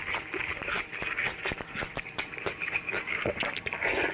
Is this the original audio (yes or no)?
no